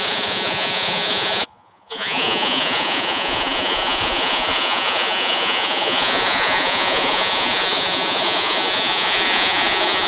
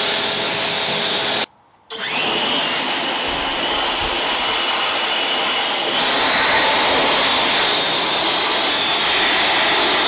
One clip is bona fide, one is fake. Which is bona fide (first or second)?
second